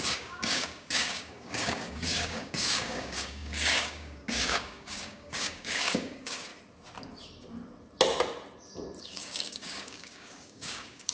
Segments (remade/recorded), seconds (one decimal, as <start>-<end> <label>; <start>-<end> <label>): 0.0-6.5 remade; 6.5-9.0 recorded; 9.0-11.1 remade

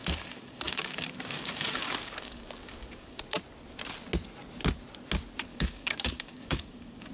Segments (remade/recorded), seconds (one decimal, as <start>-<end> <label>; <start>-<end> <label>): 0.0-3.2 remade; 3.2-5.5 recorded; 5.5-7.1 remade

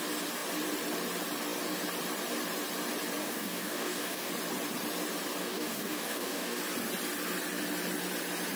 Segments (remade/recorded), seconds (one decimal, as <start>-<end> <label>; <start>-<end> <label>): 0.0-3.2 recorded; 3.2-4.3 remade; 4.3-5.4 recorded; 5.4-6.6 remade; 6.6-8.6 recorded

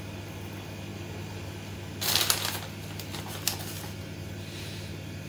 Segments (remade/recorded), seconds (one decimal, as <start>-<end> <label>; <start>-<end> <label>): 0.0-5.3 recorded

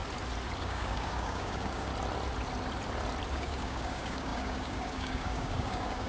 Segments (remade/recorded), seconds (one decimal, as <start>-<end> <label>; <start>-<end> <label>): 0.0-0.6 recorded; 0.6-1.9 remade; 1.9-3.3 recorded; 3.3-6.1 remade

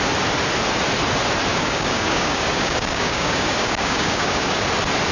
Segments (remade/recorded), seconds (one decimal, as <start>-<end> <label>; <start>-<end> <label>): 0.0-1.5 recorded; 1.5-4.6 remade; 4.6-5.1 recorded

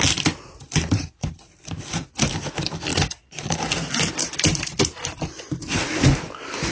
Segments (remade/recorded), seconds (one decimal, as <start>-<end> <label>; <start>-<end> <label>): 0.0-6.7 recorded

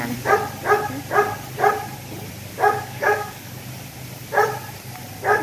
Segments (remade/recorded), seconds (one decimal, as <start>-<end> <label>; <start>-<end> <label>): 0.0-2.5 recorded; 2.5-3.6 remade; 3.6-5.4 recorded